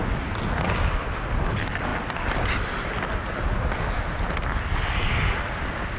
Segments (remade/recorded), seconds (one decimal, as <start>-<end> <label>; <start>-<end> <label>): 0.0-6.0 recorded